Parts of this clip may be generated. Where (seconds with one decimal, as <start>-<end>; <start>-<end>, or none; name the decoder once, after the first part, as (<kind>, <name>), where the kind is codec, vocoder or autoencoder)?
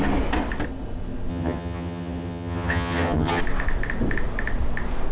1.3-3.4 (vocoder, HiFi-GAN)